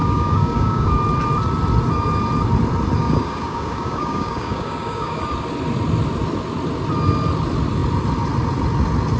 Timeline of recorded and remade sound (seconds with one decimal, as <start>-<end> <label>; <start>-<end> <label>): 0.0-0.9 remade; 0.9-3.0 recorded; 3.0-5.2 remade; 5.2-9.2 recorded